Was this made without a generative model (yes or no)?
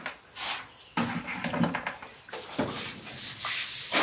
yes